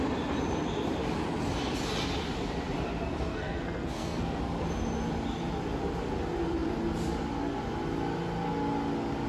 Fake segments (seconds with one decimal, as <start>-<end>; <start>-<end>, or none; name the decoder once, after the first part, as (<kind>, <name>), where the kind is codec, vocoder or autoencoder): 3.3-4.4 (codec, SNAC)